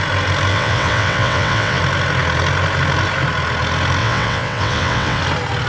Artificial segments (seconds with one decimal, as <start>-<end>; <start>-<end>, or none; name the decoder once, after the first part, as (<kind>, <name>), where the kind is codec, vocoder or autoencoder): 0.5-1.8 (vocoder, WaveNeXt); 4.0-5.2